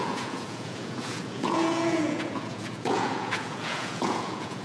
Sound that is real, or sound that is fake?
fake